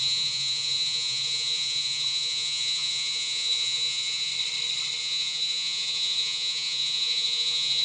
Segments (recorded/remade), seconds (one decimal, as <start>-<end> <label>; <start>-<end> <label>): 0.0-4.3 remade; 4.3-5.0 recorded; 5.0-7.8 remade